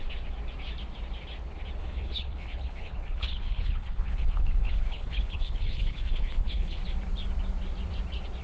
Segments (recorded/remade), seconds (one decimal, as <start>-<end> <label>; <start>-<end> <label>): 0.0-1.8 recorded; 1.8-6.8 remade; 6.8-8.4 recorded